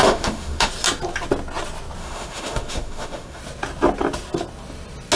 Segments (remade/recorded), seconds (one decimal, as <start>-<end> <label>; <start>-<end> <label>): 0.0-0.7 remade; 0.7-2.0 recorded; 2.0-3.4 remade; 3.4-5.2 recorded